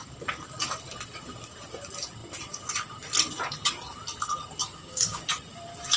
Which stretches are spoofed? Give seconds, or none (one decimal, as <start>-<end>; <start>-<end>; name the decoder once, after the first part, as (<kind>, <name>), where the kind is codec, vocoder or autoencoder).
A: 4.6-5.2 (codec, DAC)